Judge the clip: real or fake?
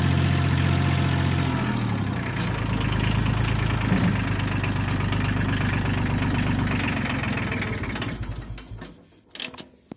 real